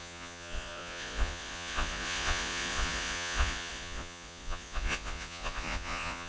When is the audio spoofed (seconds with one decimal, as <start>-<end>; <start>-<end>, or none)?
0.0-6.3